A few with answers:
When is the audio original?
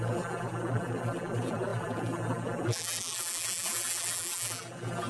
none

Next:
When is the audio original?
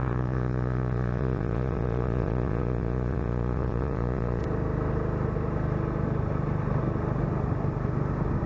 4.4-8.5